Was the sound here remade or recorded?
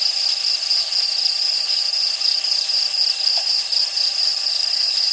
recorded